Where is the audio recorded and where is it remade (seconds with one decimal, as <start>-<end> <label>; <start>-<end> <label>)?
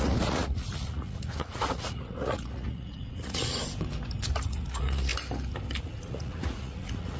0.0-3.6 remade; 3.6-4.3 recorded; 4.3-5.1 remade; 5.1-5.8 recorded; 5.8-7.2 remade